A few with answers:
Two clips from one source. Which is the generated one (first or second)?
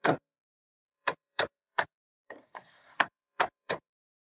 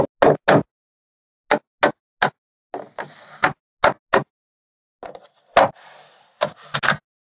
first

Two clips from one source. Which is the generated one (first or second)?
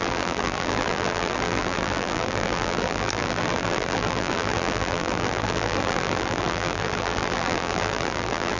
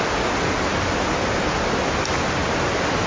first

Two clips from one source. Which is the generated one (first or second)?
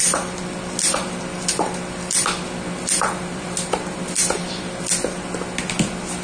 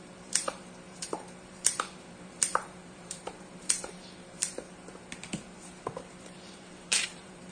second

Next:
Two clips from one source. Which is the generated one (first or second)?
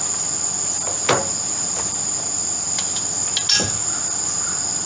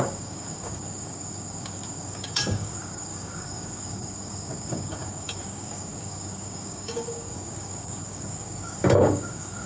second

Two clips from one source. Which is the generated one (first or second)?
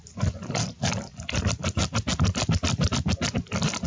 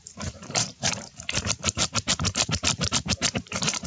second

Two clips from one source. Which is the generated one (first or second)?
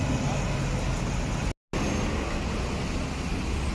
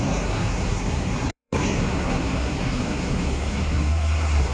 second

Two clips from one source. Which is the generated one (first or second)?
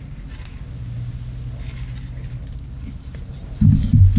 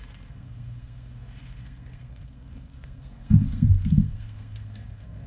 second